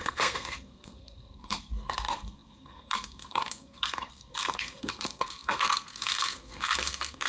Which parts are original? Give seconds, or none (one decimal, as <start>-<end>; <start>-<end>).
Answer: none